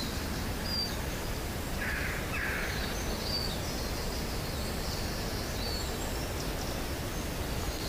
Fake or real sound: real